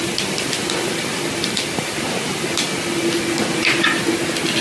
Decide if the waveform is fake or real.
real